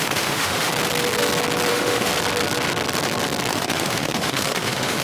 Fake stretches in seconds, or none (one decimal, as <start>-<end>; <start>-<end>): 0.0-0.7; 1.7-2.1; 3.5-5.0